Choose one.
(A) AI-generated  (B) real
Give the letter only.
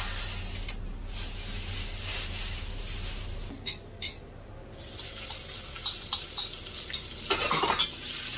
B